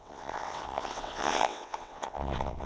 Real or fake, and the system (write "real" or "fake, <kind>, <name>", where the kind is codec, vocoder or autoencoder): fake, vocoder, WaveNeXt